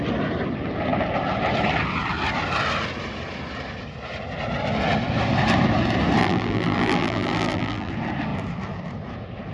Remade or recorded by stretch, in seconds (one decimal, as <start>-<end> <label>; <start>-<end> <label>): 0.0-6.2 recorded; 6.2-7.9 remade; 7.9-9.5 recorded